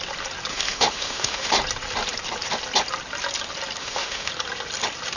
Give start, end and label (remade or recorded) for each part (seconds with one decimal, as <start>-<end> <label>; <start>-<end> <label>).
0.0-0.5 recorded; 0.5-1.5 remade; 1.5-3.8 recorded; 3.8-4.3 remade; 4.3-5.2 recorded